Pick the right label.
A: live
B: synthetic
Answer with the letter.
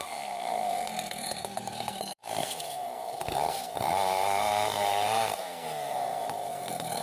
B